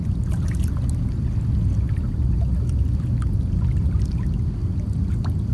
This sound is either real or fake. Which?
real